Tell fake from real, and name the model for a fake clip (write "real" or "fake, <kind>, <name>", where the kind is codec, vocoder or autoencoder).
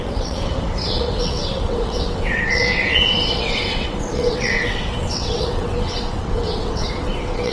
fake, vocoder, WaveNeXt